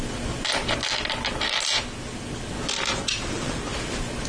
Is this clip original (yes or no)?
yes